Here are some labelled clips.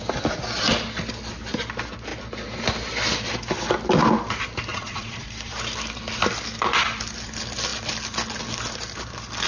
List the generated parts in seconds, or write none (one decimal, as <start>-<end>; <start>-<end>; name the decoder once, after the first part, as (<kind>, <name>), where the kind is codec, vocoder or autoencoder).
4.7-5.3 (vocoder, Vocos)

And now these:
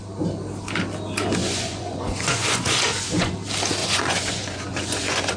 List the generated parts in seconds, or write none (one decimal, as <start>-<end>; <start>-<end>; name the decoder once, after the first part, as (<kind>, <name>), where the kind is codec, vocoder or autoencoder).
1.4-3.3 (vocoder, Vocos); 3.8-5.4

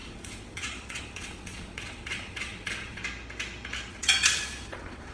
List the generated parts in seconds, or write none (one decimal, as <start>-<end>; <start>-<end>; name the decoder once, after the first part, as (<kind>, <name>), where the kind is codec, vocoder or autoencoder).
0.0-3.0 (vocoder, Vocos); 3.9-5.1

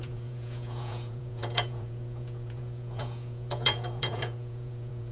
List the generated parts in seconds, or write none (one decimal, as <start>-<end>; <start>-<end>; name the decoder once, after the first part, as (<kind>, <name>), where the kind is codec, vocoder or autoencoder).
0.0-5.1 (vocoder, Vocos)